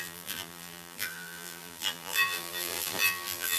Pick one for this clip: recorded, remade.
remade